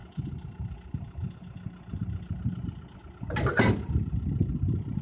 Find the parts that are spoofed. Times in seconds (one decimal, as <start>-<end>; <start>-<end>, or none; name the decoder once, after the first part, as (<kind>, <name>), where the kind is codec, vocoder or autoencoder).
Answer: none